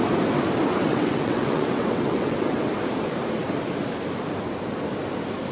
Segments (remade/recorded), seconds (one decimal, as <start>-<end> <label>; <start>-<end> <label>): 0.0-0.8 recorded; 0.8-2.7 remade; 2.7-5.5 recorded